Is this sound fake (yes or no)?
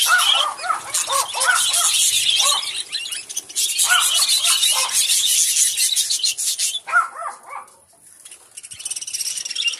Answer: no